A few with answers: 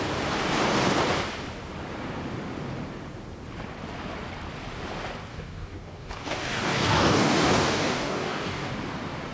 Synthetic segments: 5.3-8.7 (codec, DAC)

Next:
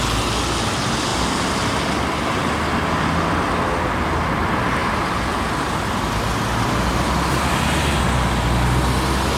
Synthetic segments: none

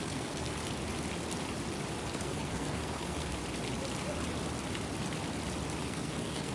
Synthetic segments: 0.0-0.6 (codec, SNAC); 2.1-3.4; 5.8-6.5

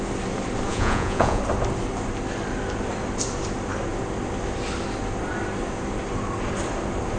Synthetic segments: 0.7-1.4 (vocoder, Vocos)